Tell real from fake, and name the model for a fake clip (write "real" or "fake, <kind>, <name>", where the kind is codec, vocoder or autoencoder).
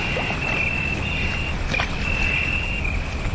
real